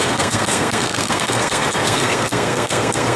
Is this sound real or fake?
fake